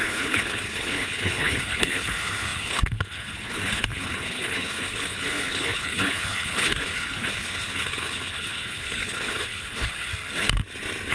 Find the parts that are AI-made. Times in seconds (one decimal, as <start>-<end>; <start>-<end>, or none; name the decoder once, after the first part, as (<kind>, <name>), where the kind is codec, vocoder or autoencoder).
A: 0.0-10.1 (codec, HILCodec)